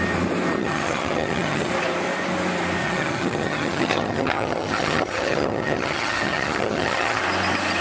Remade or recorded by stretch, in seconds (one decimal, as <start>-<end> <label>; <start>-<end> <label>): 0.0-0.6 recorded; 0.6-1.7 remade; 1.7-2.8 recorded; 2.8-7.2 remade; 7.2-7.8 recorded